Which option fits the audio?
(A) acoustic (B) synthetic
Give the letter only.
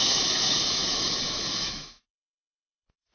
B